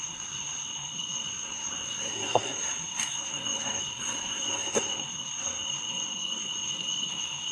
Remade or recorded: remade